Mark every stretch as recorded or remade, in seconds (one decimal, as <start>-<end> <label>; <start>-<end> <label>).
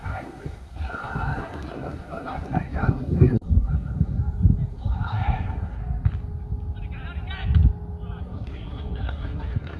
0.0-4.2 remade; 4.2-4.7 recorded; 4.7-5.8 remade; 5.8-8.2 recorded; 8.2-9.8 remade